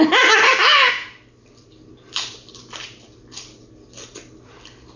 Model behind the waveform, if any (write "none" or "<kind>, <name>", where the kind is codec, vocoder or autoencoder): none